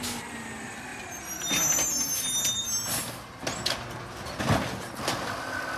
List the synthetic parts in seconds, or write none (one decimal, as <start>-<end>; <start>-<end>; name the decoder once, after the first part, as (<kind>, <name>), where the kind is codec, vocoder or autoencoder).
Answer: none